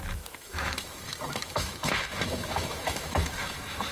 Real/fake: fake